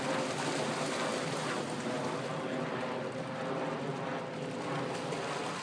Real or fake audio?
real